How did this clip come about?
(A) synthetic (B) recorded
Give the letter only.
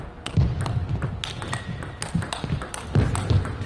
B